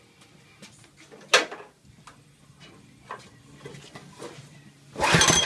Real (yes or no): yes